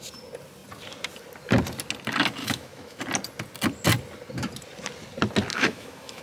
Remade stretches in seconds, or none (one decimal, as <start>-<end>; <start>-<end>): 2.4-3.0; 5.5-6.2